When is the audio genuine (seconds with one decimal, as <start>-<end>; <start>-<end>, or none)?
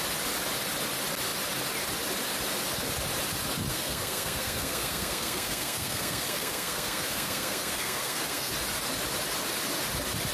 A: 0.0-3.7; 8.5-10.3